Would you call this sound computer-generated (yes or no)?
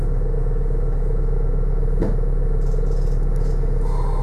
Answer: no